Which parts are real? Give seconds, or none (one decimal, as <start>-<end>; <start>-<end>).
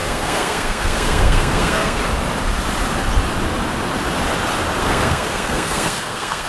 2.0-4.8